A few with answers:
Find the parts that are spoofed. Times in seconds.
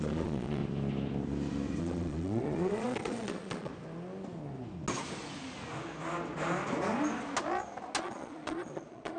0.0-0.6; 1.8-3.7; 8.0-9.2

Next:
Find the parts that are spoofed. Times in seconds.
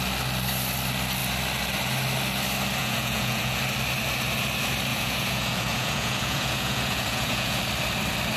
2.8-3.6; 4.9-7.6